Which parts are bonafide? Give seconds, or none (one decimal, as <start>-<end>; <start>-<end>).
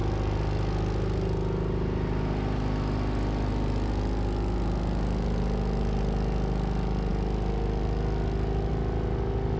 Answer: 0.0-9.6